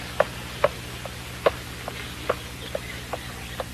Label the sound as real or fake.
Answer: real